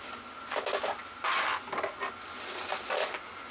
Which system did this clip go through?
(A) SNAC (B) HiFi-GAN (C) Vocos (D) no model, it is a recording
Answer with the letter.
D